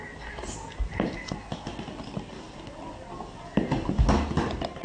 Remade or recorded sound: recorded